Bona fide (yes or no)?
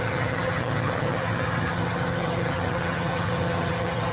no